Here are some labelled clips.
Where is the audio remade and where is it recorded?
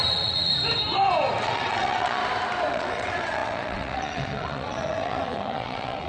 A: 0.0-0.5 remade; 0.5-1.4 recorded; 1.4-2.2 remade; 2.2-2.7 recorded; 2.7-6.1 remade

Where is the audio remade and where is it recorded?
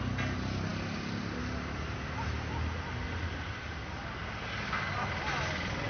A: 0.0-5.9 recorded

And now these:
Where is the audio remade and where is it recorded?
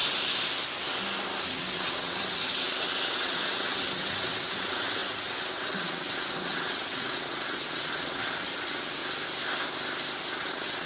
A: 0.0-1.5 recorded; 1.5-9.0 remade; 9.0-10.4 recorded; 10.4-10.9 remade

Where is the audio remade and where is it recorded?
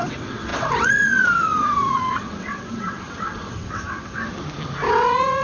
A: 0.0-4.2 remade; 4.2-4.9 recorded; 4.9-5.4 remade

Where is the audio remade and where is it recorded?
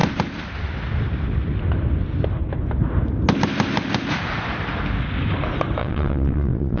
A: 0.0-5.8 recorded; 5.8-6.8 remade